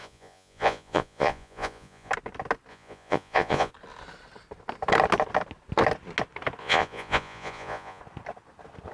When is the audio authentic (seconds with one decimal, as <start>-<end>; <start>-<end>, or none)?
2.1-2.7; 3.7-6.6; 8.0-8.9